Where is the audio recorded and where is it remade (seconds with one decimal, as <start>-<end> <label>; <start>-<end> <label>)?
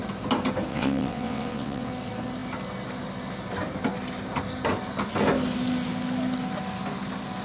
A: 0.0-0.7 recorded; 0.7-1.9 remade; 1.9-7.4 recorded